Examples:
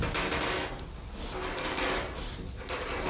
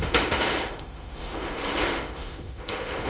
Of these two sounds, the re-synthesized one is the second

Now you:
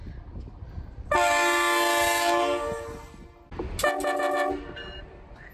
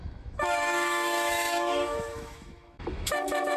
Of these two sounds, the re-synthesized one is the second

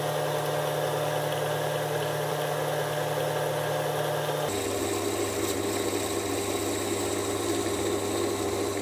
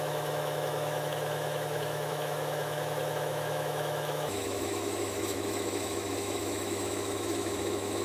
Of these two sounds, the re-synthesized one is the second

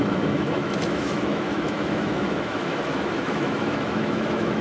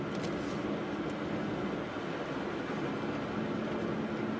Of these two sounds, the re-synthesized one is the first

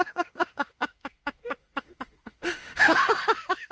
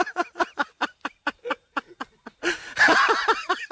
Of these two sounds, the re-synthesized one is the first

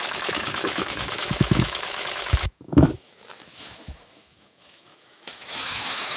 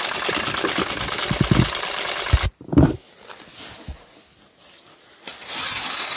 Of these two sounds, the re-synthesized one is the first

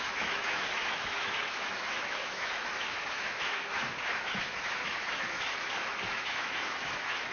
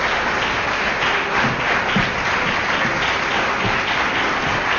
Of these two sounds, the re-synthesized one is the first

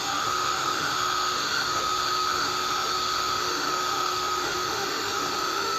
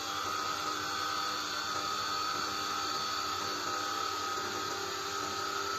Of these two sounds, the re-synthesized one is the first